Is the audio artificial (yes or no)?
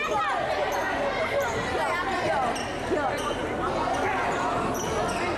no